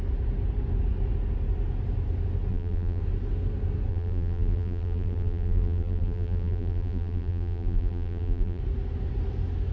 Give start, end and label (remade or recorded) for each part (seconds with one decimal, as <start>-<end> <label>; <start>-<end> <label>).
0.0-2.5 recorded; 2.5-3.0 remade; 3.0-3.9 recorded; 3.9-8.6 remade; 8.6-9.7 recorded